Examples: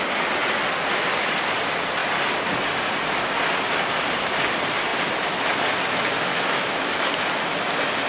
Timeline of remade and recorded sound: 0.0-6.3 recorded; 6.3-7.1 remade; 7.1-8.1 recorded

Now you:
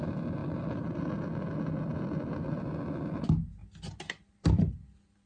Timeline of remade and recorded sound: 0.0-5.3 recorded

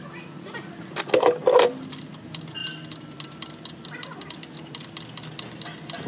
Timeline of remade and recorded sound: 0.0-6.1 recorded